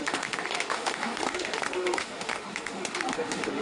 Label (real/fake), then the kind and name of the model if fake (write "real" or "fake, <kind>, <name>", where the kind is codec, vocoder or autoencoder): fake, autoencoder, DAC-VAE